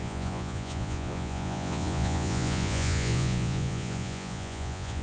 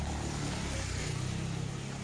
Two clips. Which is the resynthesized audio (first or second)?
first